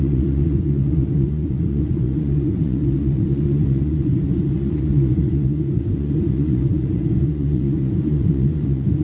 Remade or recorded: remade